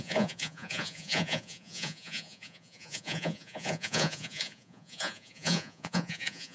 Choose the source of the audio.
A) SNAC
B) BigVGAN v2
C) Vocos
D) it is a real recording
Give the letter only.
C